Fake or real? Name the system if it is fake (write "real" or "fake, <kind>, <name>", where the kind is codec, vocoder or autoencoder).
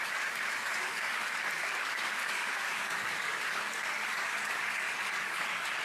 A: fake, codec, DAC